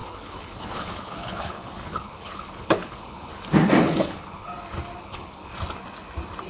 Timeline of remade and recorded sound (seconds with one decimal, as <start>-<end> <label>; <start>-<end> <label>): 0.0-3.3 remade; 3.3-3.8 recorded; 3.8-4.5 remade; 4.5-5.0 recorded; 5.0-5.5 remade; 5.5-6.5 recorded